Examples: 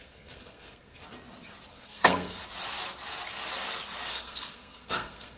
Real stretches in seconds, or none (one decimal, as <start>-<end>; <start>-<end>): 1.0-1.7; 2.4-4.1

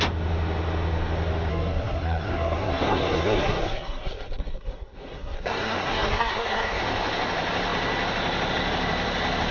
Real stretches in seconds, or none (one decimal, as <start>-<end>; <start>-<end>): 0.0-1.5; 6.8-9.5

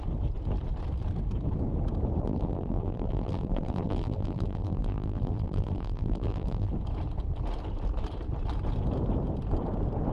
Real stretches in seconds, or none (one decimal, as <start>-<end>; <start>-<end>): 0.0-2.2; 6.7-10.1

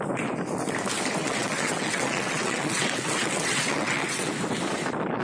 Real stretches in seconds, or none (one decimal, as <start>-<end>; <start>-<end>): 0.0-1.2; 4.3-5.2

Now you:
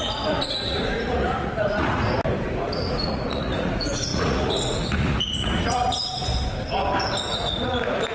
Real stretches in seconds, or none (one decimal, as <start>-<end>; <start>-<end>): 2.0-2.5; 6.3-7.2

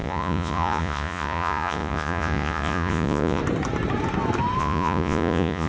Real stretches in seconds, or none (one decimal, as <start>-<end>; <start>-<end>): 3.4-4.6

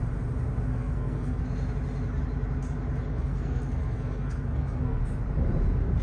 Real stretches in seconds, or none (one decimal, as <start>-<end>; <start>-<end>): 0.0-0.7; 1.4-3.1; 5.0-6.0